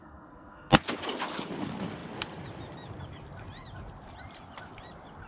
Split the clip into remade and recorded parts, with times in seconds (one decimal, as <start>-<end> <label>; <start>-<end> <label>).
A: 0.0-0.7 remade; 0.7-5.3 recorded